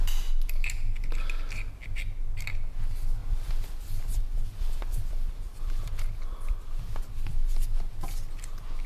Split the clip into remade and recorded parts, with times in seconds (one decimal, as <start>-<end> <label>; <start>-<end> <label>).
0.0-3.2 recorded; 3.2-7.0 remade; 7.0-8.9 recorded